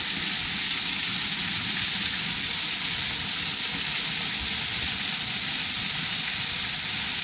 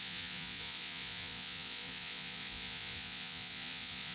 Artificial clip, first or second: second